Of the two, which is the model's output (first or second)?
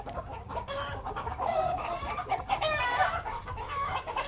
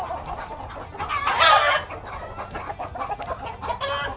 first